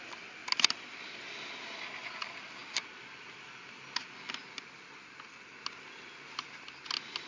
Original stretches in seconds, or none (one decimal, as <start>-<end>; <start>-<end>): 0.0-7.3